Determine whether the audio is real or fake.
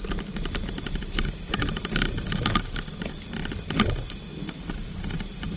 real